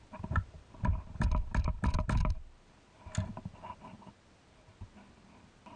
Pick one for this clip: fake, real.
real